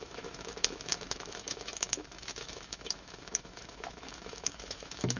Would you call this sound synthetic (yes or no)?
yes